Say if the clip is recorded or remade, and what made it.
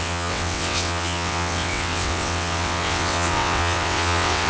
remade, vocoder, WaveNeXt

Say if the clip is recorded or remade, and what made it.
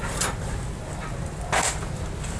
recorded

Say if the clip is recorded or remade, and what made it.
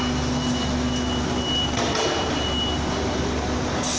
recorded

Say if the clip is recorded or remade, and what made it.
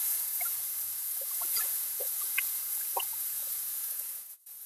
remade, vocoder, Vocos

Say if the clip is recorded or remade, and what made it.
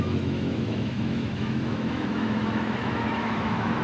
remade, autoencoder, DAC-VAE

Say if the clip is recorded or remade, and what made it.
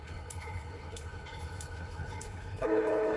remade, codec, HILCodec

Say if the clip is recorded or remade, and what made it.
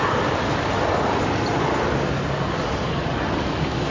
recorded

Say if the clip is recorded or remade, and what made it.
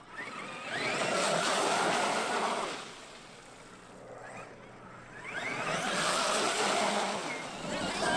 recorded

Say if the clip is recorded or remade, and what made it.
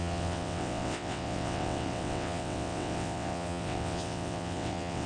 remade, vocoder, WaveNeXt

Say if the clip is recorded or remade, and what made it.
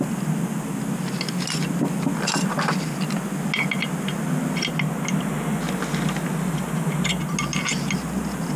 recorded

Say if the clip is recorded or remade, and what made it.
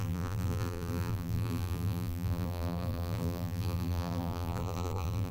remade, vocoder, BigVGAN v2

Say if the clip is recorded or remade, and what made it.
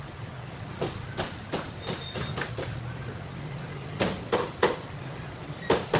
recorded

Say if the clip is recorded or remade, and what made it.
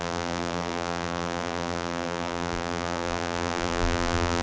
remade, vocoder, BigVGAN v2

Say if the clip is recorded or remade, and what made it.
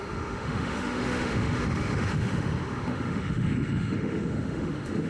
remade, autoencoder, DAC-VAE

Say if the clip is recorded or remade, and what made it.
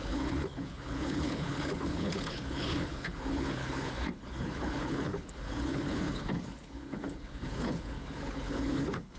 remade, codec, HILCodec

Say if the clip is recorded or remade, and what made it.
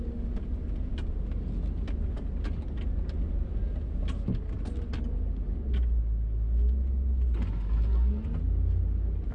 recorded